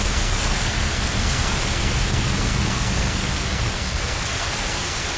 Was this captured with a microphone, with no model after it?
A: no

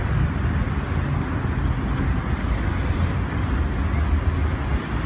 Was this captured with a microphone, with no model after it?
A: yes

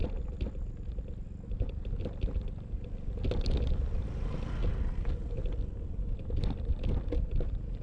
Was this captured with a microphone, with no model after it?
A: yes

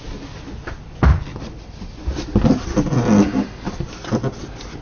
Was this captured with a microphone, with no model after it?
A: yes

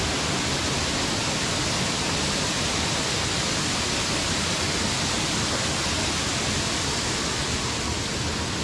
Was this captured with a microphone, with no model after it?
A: yes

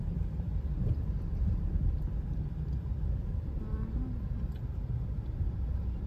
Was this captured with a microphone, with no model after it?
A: no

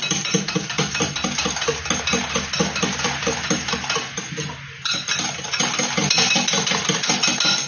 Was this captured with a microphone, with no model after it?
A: yes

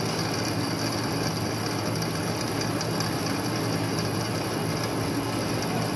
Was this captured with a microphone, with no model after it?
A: yes